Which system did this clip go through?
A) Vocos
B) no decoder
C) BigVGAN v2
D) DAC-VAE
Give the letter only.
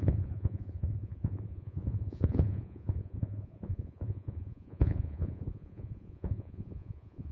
A